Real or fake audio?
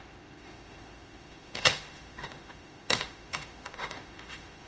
fake